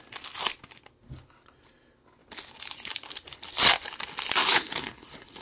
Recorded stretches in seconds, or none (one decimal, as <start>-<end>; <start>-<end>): 0.0-4.4